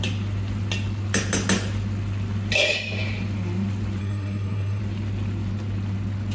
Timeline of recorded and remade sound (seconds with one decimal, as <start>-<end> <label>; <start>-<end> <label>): 0.0-4.0 recorded; 4.0-4.8 remade; 4.8-6.3 recorded